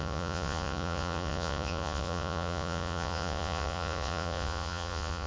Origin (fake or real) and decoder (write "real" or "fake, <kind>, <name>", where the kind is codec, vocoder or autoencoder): fake, vocoder, Vocos